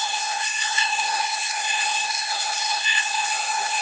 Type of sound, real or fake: fake